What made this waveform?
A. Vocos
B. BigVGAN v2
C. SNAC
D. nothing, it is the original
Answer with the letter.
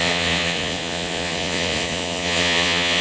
A